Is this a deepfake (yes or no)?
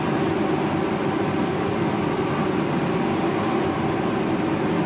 no